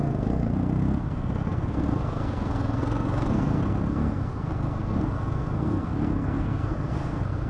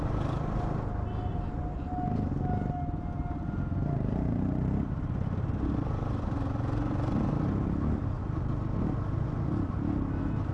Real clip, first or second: second